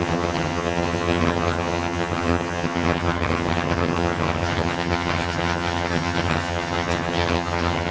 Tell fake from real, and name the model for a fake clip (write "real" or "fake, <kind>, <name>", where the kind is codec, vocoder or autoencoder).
fake, vocoder, HiFi-GAN